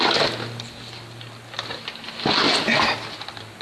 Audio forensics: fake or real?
real